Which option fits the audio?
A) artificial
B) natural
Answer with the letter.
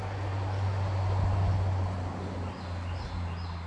B